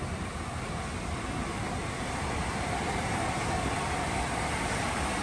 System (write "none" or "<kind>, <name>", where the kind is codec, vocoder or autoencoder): none